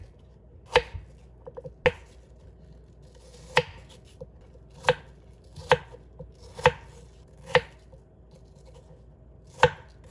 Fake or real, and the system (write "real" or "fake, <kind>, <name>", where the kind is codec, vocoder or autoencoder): real